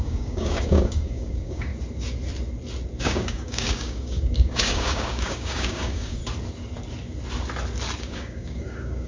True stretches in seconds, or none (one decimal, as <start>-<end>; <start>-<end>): 1.7-3.0; 6.2-8.0

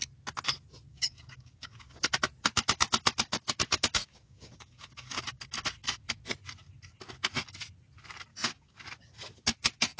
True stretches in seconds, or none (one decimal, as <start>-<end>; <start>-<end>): 0.0-0.9; 2.0-3.7; 5.4-8.3; 8.8-10.0

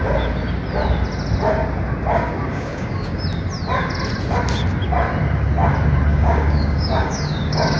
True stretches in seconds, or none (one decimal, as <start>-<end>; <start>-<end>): 0.0-2.5; 3.2-6.1

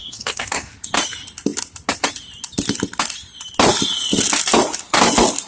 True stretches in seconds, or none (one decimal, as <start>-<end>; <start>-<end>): 0.7-5.5

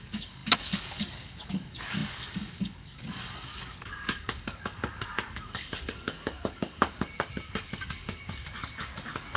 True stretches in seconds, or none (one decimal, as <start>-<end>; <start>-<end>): none

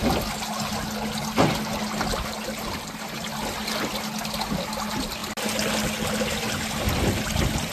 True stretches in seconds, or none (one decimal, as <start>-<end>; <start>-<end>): 0.0-7.7